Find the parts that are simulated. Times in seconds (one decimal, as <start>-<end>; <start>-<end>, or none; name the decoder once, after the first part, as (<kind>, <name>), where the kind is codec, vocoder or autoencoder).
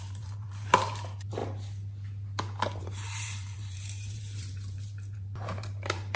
0.0-1.4 (vocoder, BigVGAN v2); 2.8-6.2